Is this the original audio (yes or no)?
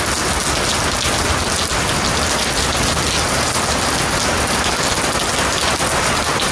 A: yes